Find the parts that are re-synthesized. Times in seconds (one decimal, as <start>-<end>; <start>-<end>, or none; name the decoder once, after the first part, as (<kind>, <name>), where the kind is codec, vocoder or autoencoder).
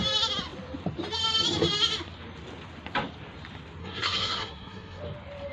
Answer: 3.8-5.0 (codec, SNAC)